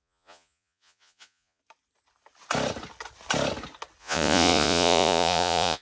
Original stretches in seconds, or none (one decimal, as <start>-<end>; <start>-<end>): 1.6-4.0